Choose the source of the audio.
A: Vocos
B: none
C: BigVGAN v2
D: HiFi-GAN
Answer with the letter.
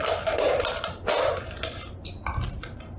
B